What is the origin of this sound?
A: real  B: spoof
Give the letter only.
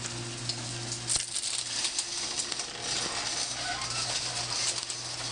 A